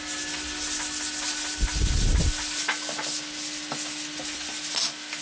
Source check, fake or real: real